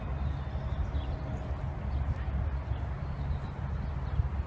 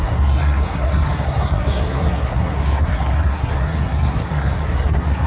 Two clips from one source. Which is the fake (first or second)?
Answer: second